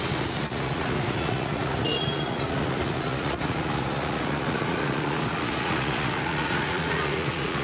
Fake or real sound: fake